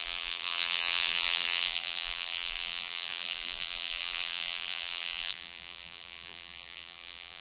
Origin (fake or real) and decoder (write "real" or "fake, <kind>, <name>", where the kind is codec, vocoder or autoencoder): fake, vocoder, BigVGAN v2